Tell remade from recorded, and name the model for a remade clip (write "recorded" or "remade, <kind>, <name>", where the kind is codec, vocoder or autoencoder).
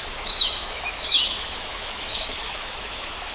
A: remade, autoencoder, DAC-VAE